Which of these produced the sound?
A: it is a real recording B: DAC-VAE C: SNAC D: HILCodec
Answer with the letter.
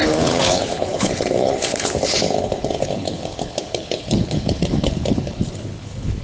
D